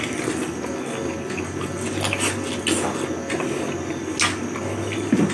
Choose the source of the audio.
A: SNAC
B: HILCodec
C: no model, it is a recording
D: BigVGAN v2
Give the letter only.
C